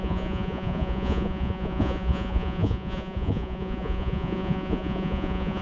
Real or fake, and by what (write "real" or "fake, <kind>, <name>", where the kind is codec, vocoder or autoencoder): fake, vocoder, Vocos